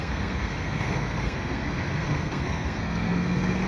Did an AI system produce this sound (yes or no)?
yes